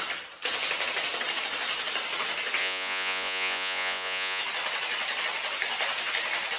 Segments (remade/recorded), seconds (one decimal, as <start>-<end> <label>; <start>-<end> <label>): 0.0-2.6 recorded; 2.6-4.4 remade; 4.4-6.6 recorded